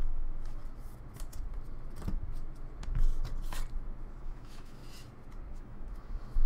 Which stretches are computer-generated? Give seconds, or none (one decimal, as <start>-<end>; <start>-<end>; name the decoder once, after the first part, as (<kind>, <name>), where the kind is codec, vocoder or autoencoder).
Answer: 0.0-0.6 (autoencoder, DAC-VAE); 4.2-4.8; 5.5-6.5